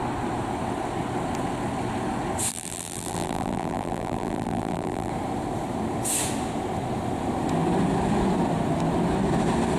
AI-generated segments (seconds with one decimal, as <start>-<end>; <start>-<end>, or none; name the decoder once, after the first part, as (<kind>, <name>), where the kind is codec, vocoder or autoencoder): 2.5-5.1 (vocoder, BigVGAN v2)